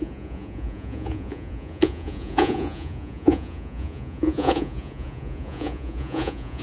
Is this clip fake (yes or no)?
yes